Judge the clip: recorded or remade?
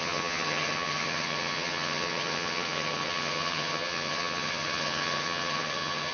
remade